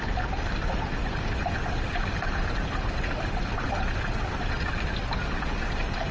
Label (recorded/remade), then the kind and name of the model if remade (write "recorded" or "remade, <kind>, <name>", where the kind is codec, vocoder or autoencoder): recorded